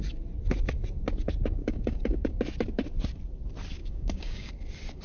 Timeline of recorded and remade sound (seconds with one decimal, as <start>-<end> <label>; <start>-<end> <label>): 0.0-1.6 recorded; 1.6-2.3 remade; 2.3-3.8 recorded; 3.8-4.5 remade; 4.5-5.0 recorded